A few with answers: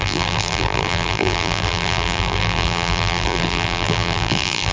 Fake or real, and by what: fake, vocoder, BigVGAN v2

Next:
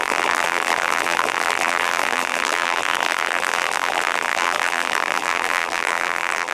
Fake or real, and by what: fake, vocoder, BigVGAN v2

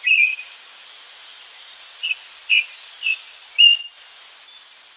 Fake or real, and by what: real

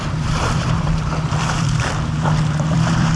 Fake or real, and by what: fake, vocoder, BigVGAN v2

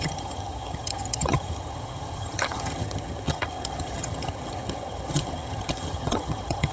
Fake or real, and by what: fake, vocoder, HiFi-GAN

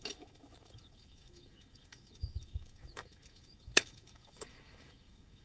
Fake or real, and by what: fake, autoencoder, DAC-VAE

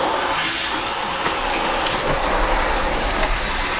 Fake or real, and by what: real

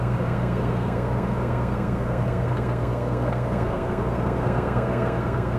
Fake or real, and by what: fake, codec, SNAC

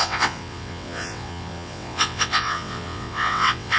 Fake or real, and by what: fake, vocoder, WaveNeXt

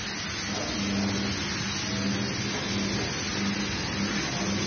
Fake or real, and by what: real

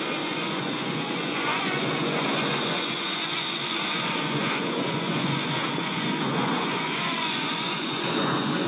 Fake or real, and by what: fake, vocoder, Vocos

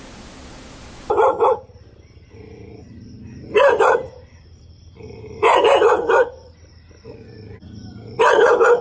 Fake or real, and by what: real